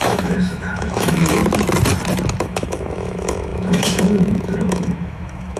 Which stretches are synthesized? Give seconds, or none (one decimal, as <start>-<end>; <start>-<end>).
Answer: 0.0-1.4; 2.4-5.6